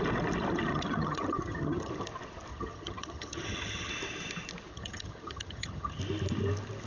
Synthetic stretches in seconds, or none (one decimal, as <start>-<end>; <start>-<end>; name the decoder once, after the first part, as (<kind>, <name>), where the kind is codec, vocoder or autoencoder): 0.7-1.9 (vocoder, HiFi-GAN); 2.5-3.9; 4.7-6.0